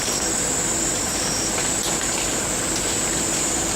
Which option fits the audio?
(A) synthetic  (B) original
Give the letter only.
B